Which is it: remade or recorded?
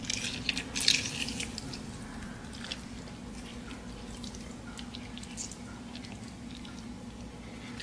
recorded